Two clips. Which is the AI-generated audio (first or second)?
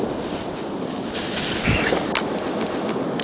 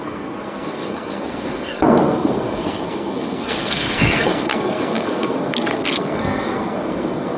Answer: second